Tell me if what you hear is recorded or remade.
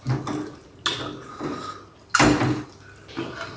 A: recorded